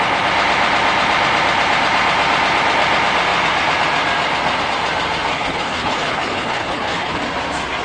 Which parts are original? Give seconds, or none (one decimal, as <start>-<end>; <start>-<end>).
0.0-5.3; 7.2-7.8